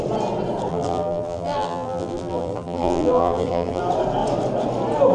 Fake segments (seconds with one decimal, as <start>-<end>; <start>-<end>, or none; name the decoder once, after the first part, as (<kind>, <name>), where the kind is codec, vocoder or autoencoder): 0.7-3.8 (vocoder, BigVGAN v2)